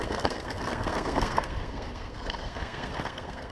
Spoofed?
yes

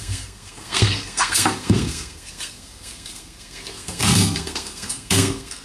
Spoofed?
yes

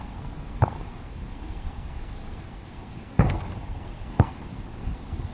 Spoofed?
yes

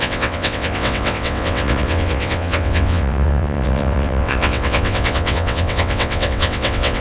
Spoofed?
yes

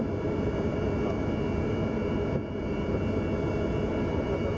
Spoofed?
no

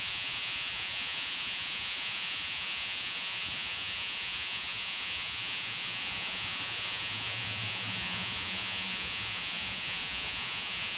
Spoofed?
yes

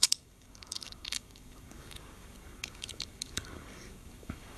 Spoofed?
yes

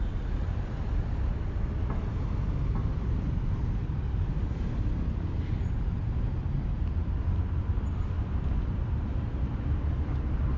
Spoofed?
no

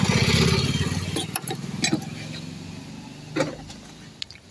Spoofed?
no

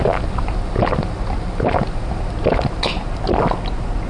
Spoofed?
no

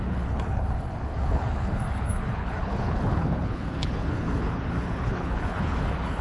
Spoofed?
yes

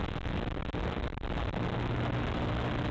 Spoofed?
no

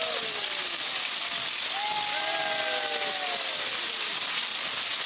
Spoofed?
no